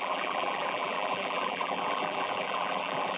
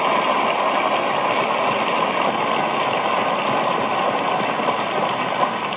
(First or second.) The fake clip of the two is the first